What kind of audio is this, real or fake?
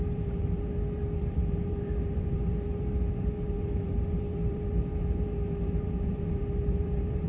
fake